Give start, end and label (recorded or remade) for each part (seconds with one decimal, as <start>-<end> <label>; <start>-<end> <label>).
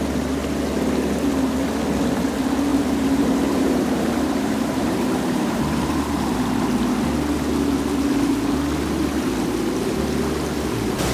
0.0-2.7 recorded; 2.7-6.4 remade; 6.4-11.1 recorded